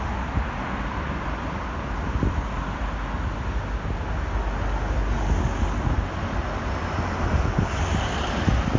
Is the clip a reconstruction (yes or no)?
no